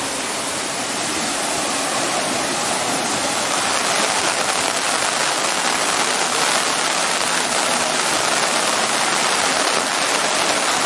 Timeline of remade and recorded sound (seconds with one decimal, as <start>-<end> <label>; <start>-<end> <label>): 0.0-10.9 recorded